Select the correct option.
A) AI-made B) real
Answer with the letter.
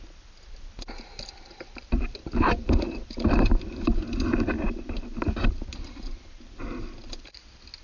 B